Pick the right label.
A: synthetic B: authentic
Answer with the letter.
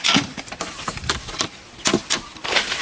B